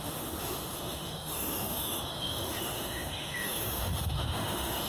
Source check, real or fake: fake